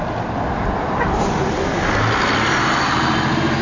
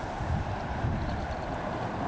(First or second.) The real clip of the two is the first